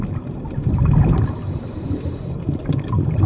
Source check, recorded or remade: recorded